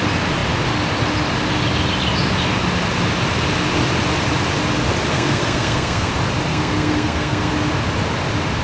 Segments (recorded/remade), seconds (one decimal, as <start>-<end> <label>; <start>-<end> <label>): 0.0-5.1 recorded; 5.1-6.1 remade; 6.1-6.5 recorded; 6.5-7.5 remade; 7.5-8.6 recorded